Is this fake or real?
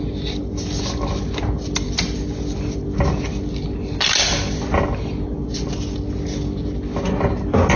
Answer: real